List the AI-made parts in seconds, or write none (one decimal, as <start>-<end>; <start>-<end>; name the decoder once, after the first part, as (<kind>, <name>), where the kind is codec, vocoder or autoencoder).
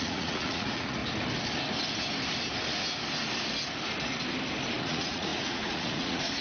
0.0-1.0 (vocoder, Vocos); 4.8-6.4